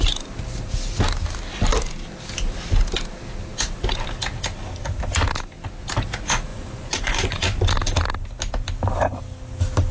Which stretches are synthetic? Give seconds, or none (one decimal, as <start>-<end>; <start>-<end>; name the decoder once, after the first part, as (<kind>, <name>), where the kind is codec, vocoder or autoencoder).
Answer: 6.5-7.4 (vocoder, Vocos)